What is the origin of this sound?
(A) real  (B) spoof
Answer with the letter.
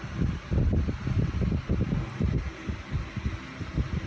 A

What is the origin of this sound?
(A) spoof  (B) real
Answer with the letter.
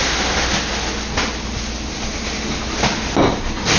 B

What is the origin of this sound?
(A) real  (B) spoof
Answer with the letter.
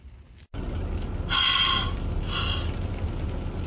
A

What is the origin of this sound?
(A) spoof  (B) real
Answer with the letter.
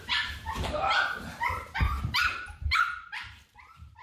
A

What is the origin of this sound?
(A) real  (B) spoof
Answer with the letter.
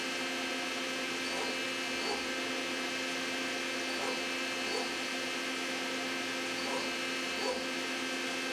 A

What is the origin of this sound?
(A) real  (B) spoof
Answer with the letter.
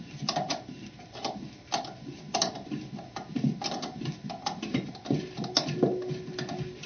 A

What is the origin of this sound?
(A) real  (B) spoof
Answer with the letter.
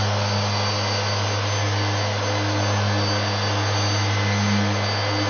A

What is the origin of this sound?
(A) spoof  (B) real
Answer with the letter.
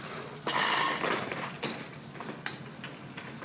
B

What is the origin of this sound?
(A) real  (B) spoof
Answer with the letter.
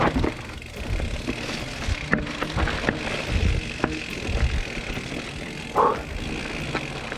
A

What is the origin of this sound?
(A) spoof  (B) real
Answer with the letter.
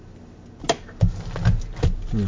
B